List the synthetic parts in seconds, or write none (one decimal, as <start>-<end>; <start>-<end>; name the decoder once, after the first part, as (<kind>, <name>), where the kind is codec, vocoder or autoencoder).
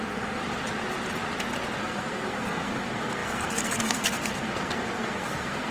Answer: 0.0-0.4 (codec, SNAC); 1.8-5.7